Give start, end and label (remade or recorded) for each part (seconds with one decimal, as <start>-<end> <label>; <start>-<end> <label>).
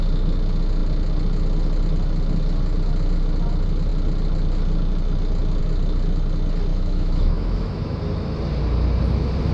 0.0-6.7 recorded; 6.7-8.0 remade; 8.0-9.5 recorded